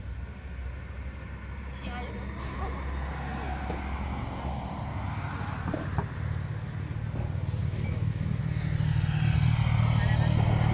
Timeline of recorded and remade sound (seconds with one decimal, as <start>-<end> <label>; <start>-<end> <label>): 0.0-7.6 recorded; 7.6-8.4 remade; 8.4-10.7 recorded